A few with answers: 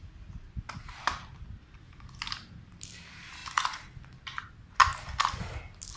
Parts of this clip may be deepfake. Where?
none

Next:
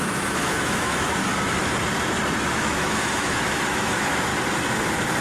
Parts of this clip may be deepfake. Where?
0.0-1.3; 2.5-4.3

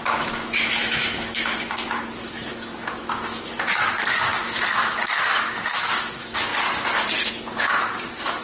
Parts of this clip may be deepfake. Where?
0.0-6.5; 7.3-8.4

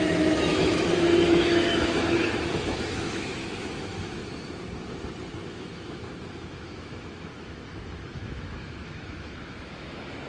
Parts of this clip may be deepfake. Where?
0.0-4.2; 5.5-10.3